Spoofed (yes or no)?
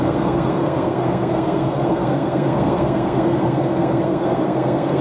yes